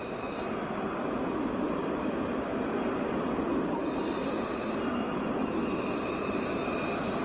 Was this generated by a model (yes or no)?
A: yes